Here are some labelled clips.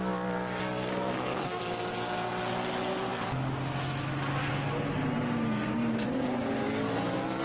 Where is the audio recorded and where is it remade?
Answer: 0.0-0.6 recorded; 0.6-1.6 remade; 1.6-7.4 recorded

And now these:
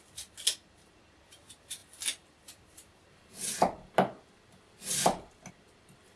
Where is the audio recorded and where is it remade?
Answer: 0.0-6.2 recorded

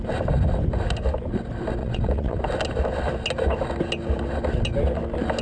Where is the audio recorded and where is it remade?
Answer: 0.0-1.8 recorded; 1.8-2.4 remade; 2.4-5.4 recorded

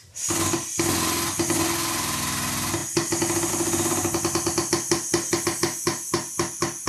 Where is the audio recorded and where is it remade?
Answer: 0.0-6.9 recorded

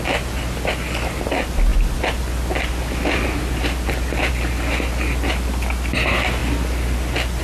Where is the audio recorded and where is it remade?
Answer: 0.0-7.4 recorded

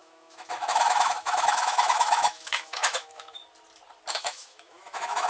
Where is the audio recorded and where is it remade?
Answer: 0.0-3.4 remade; 3.4-4.1 recorded; 4.1-5.3 remade

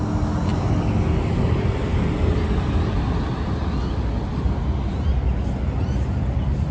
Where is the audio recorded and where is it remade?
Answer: 0.0-6.7 recorded